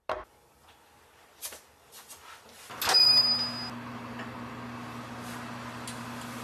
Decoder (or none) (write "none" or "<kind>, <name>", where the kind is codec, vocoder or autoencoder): none